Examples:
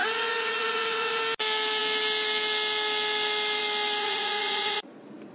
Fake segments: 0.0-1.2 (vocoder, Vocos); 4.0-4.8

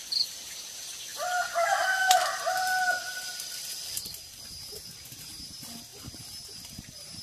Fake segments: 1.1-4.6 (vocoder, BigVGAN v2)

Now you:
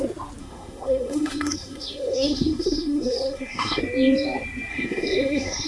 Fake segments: 0.4-3.8 (codec, SNAC); 4.7-5.7

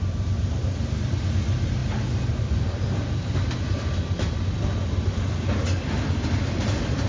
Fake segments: none

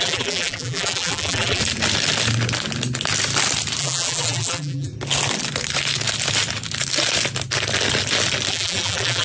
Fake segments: 0.0-1.6 (vocoder, BigVGAN v2); 3.8-4.9; 8.5-9.2

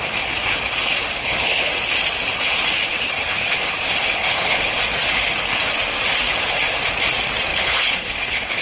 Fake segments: 1.1-1.7 (codec, HILCodec); 2.9-3.7; 4.2-4.8; 7.5-8.6